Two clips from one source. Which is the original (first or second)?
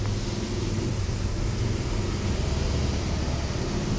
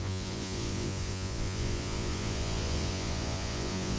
first